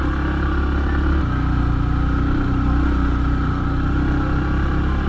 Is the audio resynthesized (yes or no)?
no